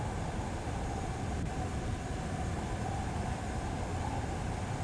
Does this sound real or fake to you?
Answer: real